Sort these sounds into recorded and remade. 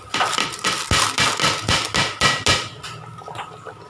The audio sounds recorded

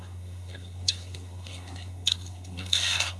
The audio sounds remade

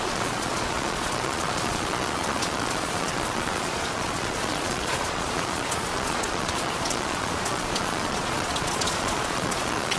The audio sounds remade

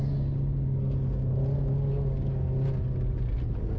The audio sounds recorded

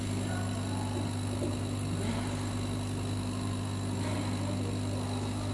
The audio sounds recorded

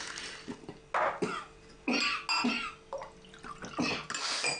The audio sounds recorded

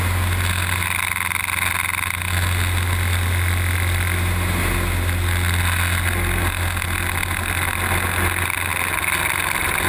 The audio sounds recorded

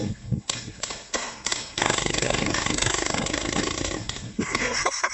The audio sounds remade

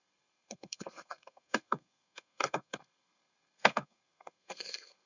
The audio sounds remade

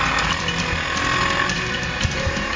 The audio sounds recorded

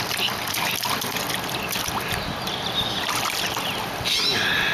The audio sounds recorded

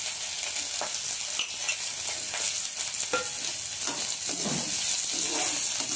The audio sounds recorded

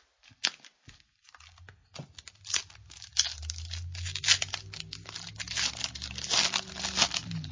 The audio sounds recorded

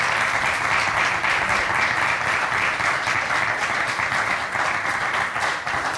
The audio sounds recorded